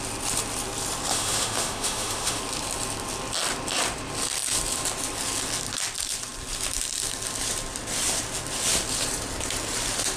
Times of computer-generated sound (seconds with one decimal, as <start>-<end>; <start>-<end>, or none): 1.1-2.4